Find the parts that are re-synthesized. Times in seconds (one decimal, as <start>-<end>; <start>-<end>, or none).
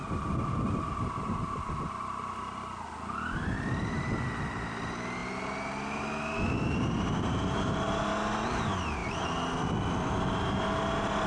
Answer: none